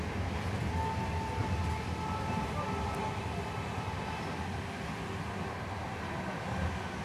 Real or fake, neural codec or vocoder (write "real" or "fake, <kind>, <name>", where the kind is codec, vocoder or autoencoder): real